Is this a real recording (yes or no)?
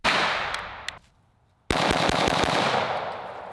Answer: yes